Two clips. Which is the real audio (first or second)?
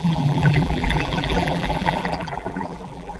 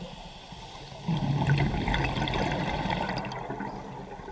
second